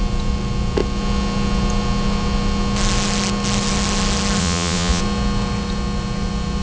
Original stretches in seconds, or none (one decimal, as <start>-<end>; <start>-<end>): 0.0-4.4; 5.0-6.6